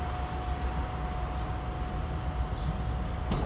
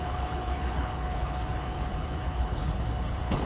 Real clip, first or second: first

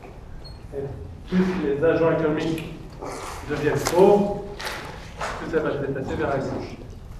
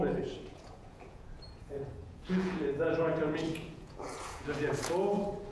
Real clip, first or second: first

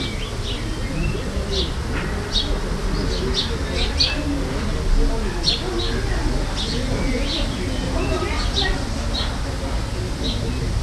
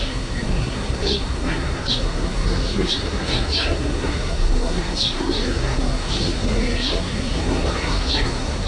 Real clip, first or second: first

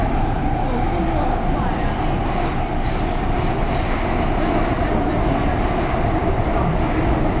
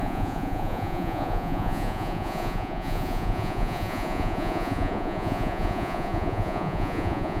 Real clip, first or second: first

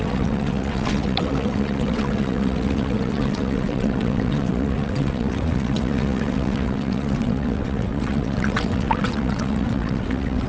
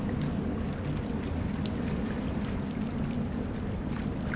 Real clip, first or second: second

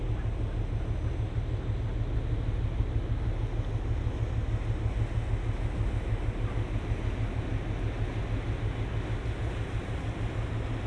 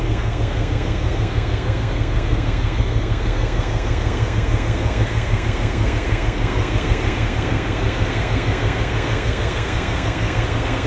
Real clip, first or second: first